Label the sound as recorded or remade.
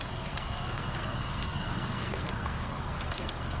remade